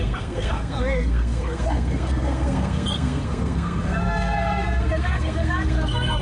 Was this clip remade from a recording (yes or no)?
yes